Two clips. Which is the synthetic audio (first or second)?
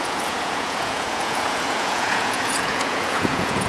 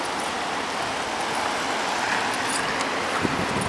first